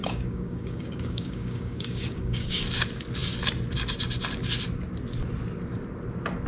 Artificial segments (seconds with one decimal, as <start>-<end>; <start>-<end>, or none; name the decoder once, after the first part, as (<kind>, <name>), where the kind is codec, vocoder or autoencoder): 0.0-2.6 (codec, DAC)